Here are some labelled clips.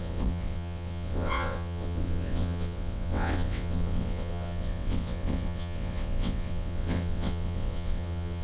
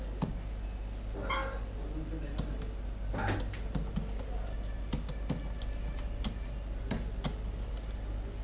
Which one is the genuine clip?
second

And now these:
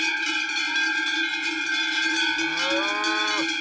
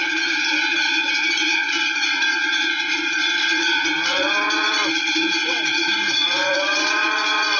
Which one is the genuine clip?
first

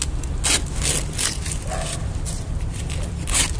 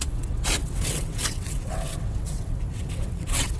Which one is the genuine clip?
first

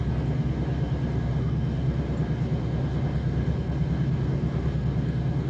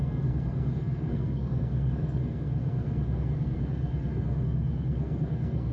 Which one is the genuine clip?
first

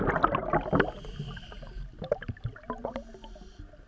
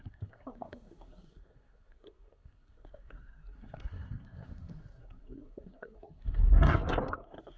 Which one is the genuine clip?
first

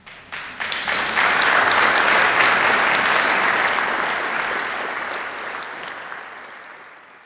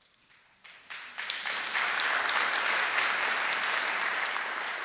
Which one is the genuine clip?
first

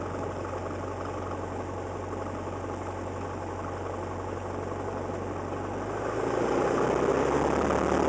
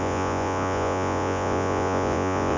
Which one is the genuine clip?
first